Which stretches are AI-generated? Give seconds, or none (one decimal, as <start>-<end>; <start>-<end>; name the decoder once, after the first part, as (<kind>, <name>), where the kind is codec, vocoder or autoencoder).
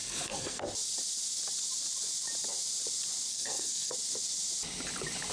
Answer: 0.0-0.6 (codec, SNAC); 3.3-3.9